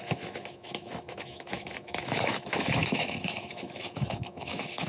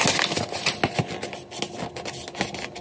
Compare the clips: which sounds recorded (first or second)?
second